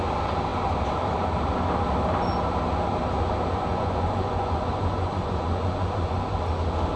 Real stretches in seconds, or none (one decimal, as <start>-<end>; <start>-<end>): 0.0-3.7; 6.4-7.0